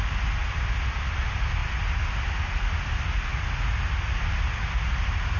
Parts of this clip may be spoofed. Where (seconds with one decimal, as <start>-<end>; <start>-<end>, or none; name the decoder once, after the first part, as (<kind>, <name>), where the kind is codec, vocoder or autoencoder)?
none